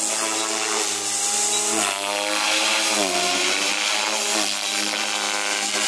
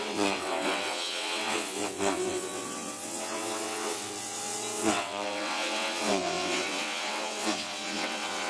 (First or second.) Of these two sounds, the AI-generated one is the second